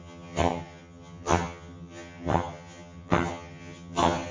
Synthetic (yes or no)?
yes